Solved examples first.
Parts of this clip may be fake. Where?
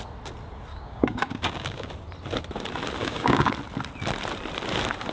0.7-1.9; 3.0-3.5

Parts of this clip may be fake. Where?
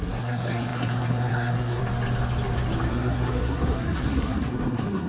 0.0-1.8; 2.9-5.1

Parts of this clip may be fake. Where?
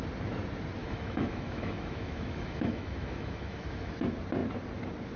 0.8-3.9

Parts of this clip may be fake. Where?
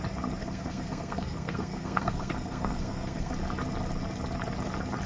0.4-3.3